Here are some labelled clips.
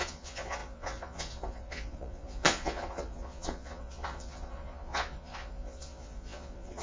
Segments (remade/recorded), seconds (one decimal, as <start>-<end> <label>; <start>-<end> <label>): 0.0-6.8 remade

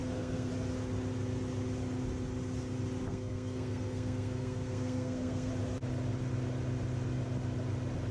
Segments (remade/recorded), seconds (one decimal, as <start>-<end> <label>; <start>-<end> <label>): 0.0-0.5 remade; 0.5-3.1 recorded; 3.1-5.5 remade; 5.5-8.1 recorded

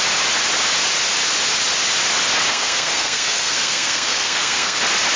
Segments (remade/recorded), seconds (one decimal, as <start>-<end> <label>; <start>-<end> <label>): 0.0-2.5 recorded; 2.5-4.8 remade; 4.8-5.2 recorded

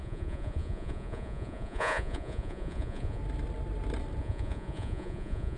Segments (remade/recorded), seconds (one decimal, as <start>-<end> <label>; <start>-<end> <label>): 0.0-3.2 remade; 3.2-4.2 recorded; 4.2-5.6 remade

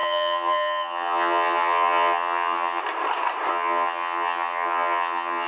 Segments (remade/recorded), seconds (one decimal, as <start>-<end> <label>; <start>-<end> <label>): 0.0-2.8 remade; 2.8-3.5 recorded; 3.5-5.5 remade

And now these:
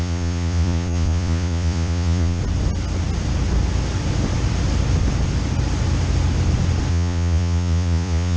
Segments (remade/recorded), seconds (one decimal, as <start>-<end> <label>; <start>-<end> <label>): 0.0-2.4 remade; 2.4-6.9 recorded; 6.9-8.4 remade

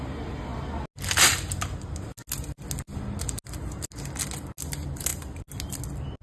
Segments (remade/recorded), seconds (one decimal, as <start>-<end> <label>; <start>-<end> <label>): 0.0-6.2 recorded